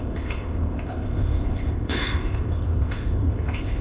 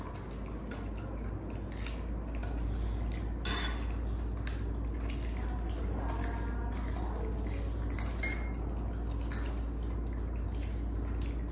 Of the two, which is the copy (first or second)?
first